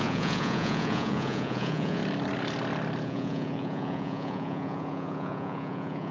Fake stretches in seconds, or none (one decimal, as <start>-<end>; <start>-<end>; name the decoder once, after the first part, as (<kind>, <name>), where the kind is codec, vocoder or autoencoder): 0.0-2.0 (vocoder, Vocos); 3.0-6.1